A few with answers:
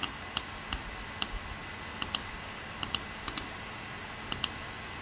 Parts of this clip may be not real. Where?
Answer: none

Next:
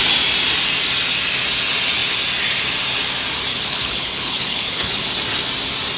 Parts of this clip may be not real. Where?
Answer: 3.5-5.0 (codec, HILCodec)

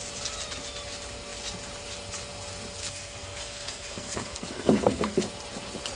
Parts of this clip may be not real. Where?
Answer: 2.8-5.2 (codec, SNAC)